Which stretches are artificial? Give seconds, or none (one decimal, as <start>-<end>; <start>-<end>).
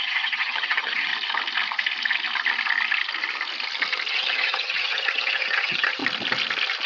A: 0.0-1.1; 4.1-6.0